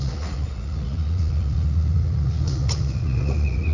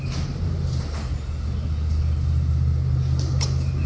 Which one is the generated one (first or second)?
first